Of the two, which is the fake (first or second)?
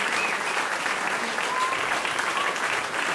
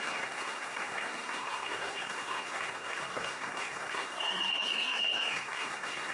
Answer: second